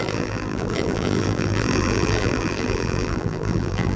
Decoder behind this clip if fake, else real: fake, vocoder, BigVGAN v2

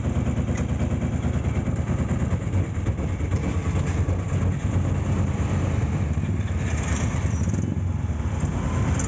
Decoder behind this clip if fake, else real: real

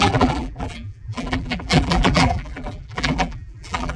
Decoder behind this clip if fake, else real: fake, vocoder, BigVGAN v2